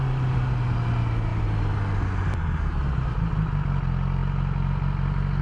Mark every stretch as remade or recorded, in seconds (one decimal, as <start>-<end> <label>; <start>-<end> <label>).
0.0-5.4 recorded